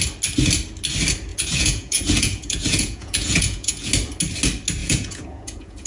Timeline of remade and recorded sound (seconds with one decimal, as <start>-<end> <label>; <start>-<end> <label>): 0.0-1.3 recorded; 1.3-3.9 remade; 3.9-4.8 recorded; 4.8-5.9 remade